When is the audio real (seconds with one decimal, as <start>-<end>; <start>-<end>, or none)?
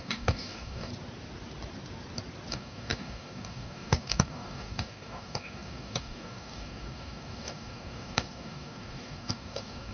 0.9-2.5